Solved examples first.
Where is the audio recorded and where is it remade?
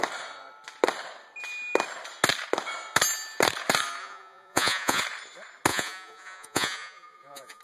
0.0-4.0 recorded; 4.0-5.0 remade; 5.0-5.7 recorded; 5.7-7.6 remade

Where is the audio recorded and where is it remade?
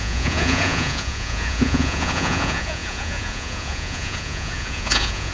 0.0-5.3 remade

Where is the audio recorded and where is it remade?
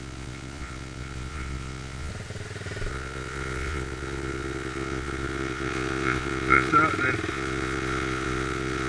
0.0-2.1 remade; 2.1-2.9 recorded; 2.9-6.7 remade; 6.7-7.3 recorded; 7.3-8.9 remade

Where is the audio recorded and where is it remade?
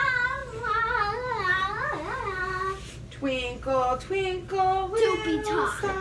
0.0-6.0 recorded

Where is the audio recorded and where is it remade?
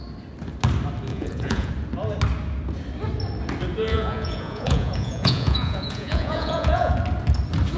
0.0-1.1 recorded; 1.1-1.7 remade; 1.7-3.9 recorded; 3.9-6.9 remade; 6.9-7.8 recorded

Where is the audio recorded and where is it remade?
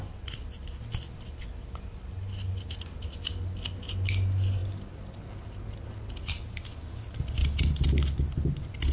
0.0-8.9 recorded